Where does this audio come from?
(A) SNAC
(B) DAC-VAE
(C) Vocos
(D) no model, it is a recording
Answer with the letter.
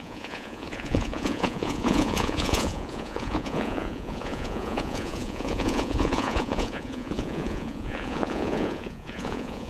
C